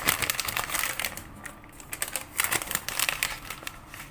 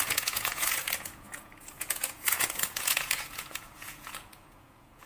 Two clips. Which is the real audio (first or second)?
first